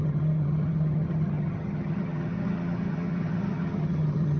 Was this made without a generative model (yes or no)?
no